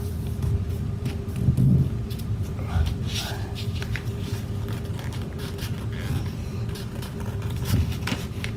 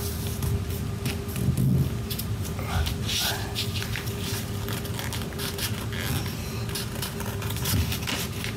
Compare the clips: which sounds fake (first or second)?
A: first